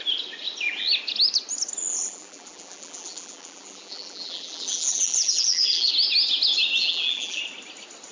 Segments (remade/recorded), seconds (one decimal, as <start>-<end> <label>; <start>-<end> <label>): 0.0-1.9 recorded; 1.9-5.9 remade; 5.9-6.8 recorded; 6.8-7.4 remade; 7.4-8.1 recorded